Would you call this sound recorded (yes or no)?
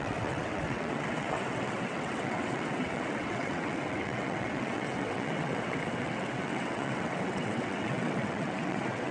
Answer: no